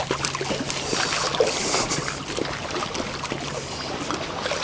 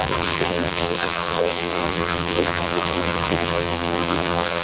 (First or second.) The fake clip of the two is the second